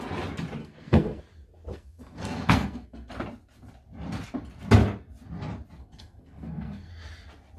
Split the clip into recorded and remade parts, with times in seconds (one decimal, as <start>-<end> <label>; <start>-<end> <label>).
0.0-0.6 recorded; 0.6-1.2 remade; 1.2-1.7 recorded; 1.7-3.1 remade; 3.1-5.8 recorded; 5.8-6.9 remade; 6.9-7.6 recorded